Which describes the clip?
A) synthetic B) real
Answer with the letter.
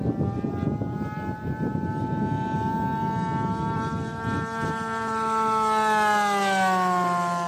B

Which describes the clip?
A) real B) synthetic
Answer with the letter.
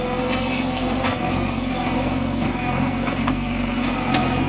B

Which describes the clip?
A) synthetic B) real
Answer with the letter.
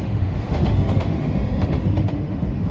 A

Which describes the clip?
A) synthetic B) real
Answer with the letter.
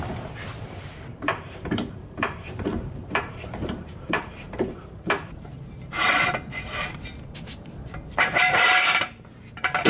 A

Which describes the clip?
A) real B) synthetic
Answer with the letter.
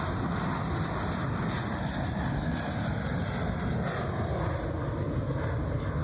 A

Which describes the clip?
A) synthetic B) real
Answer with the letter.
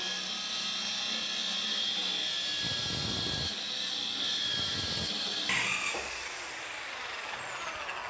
B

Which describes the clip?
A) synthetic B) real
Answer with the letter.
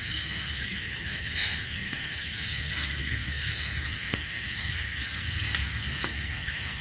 A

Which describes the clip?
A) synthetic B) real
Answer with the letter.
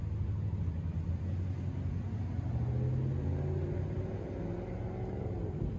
B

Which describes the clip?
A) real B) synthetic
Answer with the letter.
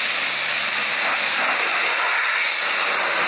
A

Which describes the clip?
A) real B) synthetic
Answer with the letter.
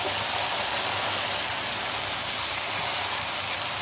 A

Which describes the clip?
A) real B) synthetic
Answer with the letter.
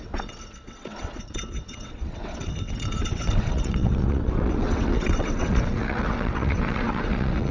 B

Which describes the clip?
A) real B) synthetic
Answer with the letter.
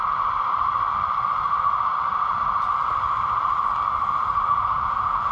A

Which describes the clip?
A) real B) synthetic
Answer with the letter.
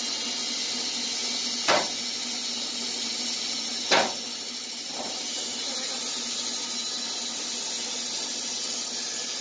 A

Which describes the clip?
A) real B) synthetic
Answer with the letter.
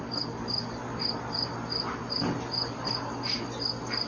A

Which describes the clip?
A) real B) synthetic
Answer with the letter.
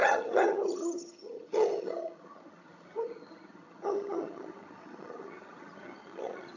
B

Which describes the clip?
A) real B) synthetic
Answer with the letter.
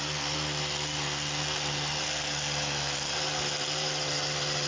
A